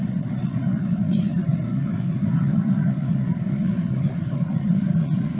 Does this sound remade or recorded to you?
remade